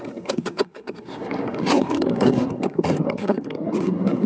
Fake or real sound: fake